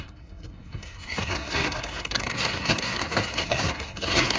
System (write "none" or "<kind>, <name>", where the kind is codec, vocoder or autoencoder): codec, SNAC